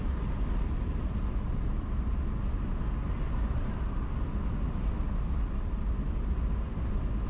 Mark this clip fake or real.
real